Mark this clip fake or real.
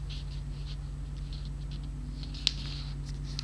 real